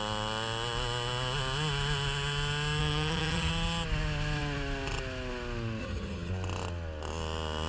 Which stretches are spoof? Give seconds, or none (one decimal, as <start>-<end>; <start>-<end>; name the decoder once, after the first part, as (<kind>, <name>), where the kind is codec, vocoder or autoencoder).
2.8-3.5 (vocoder, HiFi-GAN); 5.8-6.3